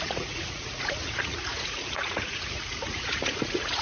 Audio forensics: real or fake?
fake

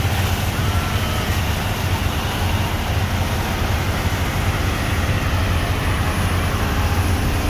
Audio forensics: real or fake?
real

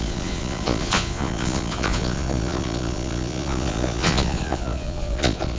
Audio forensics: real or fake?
fake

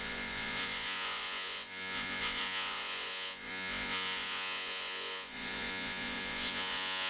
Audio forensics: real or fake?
fake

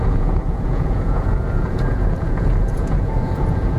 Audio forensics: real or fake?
fake